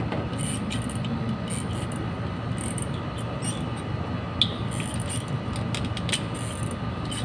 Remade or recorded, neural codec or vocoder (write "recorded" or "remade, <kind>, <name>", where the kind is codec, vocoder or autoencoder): recorded